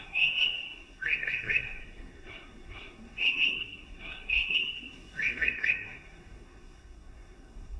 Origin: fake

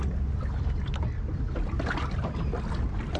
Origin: real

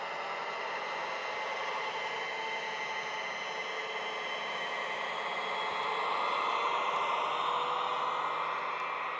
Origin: real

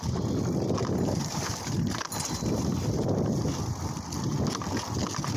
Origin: real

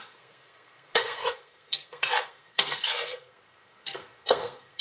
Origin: fake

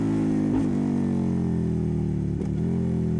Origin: real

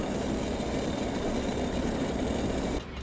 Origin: real